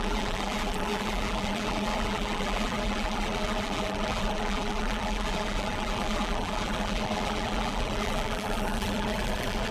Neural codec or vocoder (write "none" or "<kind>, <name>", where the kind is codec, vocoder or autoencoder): vocoder, BigVGAN v2